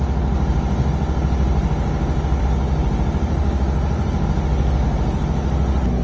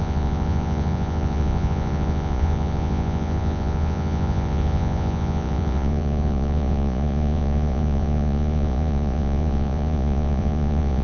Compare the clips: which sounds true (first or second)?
first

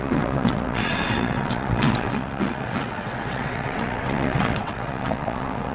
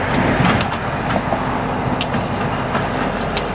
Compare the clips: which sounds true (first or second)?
second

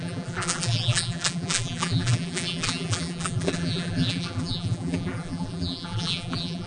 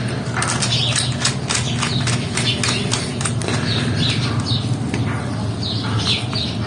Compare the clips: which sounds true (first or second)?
second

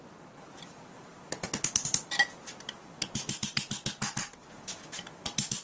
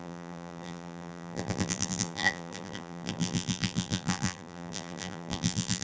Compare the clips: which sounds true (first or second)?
first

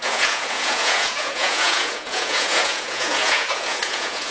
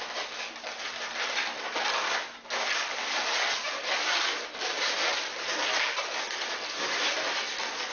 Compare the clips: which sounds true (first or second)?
second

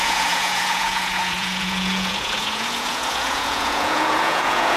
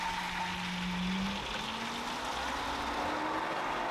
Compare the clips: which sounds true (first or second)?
second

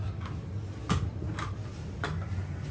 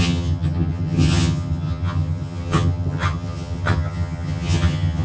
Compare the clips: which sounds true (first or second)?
first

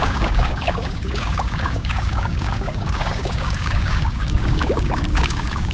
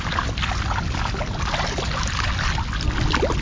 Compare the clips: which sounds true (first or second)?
second